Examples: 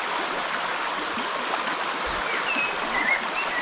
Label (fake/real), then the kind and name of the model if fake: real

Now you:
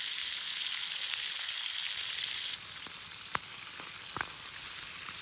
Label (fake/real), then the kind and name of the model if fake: real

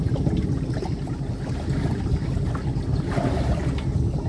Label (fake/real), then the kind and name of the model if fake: real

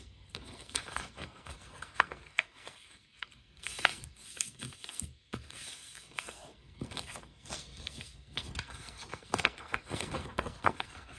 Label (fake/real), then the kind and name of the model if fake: fake, codec, SNAC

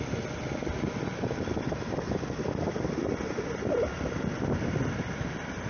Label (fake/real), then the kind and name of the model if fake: real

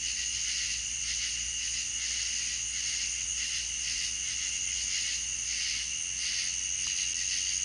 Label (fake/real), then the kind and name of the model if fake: real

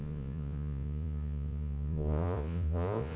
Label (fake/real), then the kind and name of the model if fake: fake, vocoder, Vocos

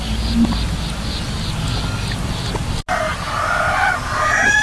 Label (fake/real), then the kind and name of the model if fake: real